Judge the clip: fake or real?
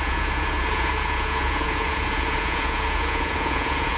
fake